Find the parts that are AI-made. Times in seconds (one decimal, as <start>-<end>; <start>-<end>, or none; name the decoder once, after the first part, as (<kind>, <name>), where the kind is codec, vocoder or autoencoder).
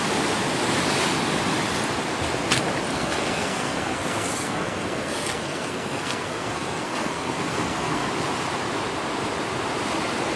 2.9-8.1 (codec, SNAC)